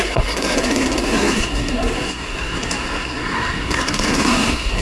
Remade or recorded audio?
remade